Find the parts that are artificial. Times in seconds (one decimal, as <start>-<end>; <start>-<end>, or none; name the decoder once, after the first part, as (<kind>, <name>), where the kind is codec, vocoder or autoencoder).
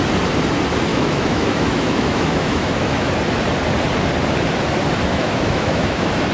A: 0.9-3.1 (autoencoder, DAC-VAE); 5.1-6.3